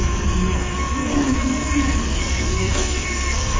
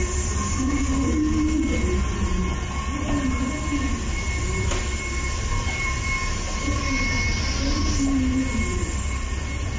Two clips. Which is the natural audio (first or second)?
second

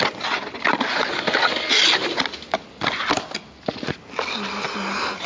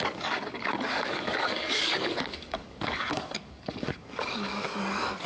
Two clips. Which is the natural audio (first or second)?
first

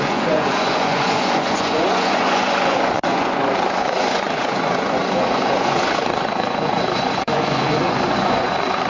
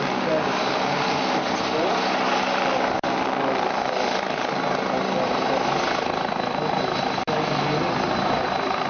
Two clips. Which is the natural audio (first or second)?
second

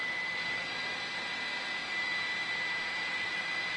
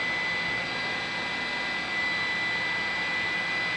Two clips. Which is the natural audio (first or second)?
second